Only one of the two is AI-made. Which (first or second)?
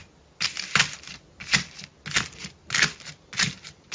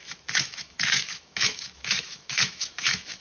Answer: second